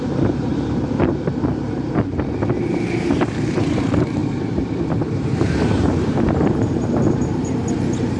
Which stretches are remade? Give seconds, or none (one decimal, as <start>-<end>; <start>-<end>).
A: 0.0-0.5; 1.0-8.2